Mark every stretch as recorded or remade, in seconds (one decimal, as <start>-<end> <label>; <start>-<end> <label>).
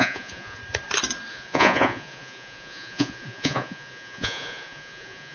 0.0-0.6 remade; 0.6-1.3 recorded; 1.3-5.3 remade